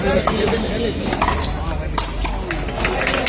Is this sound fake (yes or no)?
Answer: no